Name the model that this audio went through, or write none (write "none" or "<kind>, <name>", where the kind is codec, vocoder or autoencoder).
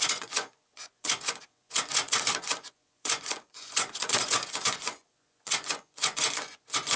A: vocoder, Vocos